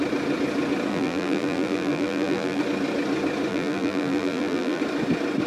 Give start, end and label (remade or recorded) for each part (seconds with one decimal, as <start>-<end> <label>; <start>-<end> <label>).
0.0-0.9 recorded; 0.9-2.6 remade; 2.6-3.5 recorded; 3.5-4.8 remade; 4.8-5.5 recorded

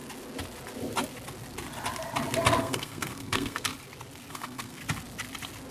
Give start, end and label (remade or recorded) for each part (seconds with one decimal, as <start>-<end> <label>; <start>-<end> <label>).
0.0-2.6 recorded; 2.6-3.7 remade; 3.7-4.3 recorded; 4.3-4.8 remade; 4.8-5.7 recorded